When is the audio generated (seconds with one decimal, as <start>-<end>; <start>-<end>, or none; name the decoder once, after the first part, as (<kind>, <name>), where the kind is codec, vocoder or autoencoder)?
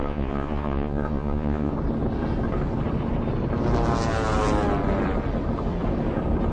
0.0-1.7 (vocoder, Vocos)